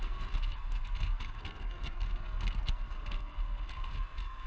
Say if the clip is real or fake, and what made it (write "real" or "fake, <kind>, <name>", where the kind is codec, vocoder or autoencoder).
fake, codec, SNAC